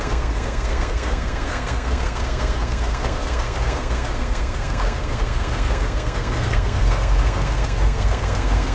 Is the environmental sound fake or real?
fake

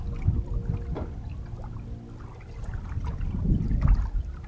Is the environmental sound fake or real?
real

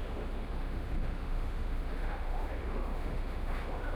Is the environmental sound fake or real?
fake